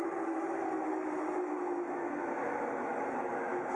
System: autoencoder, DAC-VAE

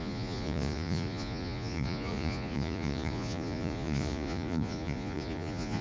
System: vocoder, Vocos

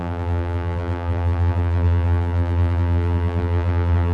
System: vocoder, BigVGAN v2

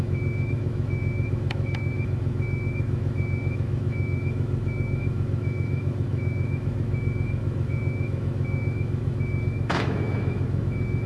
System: autoencoder, DAC-VAE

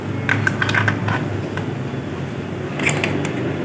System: none